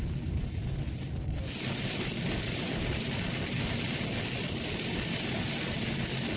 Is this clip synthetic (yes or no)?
no